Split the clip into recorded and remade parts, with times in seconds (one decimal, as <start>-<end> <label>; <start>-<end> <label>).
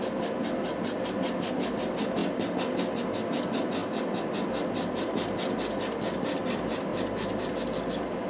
0.0-8.3 recorded